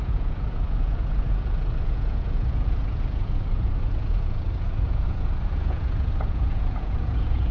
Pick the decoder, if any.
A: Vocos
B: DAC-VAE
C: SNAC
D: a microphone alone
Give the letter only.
A